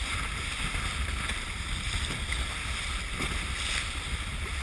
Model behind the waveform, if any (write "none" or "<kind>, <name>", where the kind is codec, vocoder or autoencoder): none